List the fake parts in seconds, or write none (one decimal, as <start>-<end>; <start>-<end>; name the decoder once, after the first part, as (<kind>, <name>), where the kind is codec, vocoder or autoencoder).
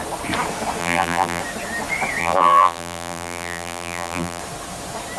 0.8-1.4 (vocoder, BigVGAN v2); 2.2-4.4